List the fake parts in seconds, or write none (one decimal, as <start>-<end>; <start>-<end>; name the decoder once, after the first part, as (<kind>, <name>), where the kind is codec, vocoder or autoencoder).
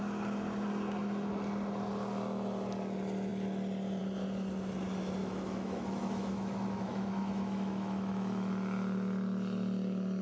5.2-8.5 (autoencoder, DAC-VAE)